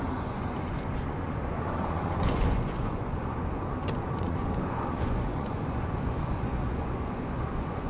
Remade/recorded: remade